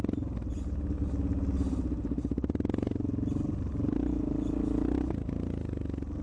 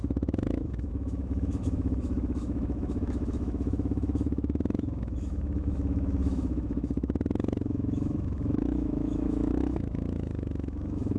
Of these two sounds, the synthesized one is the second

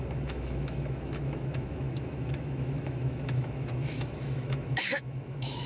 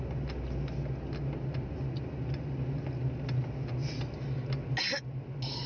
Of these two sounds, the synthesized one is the first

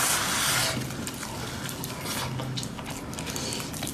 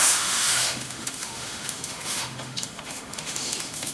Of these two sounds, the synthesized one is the second